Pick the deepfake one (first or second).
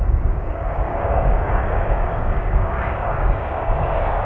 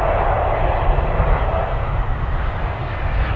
first